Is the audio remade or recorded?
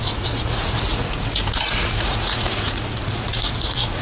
remade